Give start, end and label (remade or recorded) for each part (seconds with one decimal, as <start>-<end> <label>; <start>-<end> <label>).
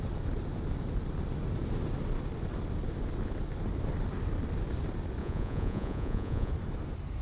0.0-5.2 recorded; 5.2-6.5 remade; 6.5-7.2 recorded